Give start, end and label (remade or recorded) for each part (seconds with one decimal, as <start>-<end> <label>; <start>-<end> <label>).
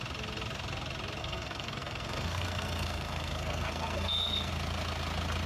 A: 0.0-1.2 recorded; 1.2-4.5 remade; 4.5-5.5 recorded